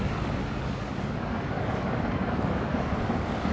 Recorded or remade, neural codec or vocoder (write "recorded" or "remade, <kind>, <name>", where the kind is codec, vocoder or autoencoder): remade, codec, DAC